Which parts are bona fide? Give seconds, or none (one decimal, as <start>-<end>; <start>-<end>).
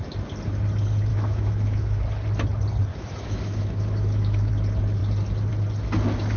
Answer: 0.0-1.1; 2.0-2.9; 4.5-6.4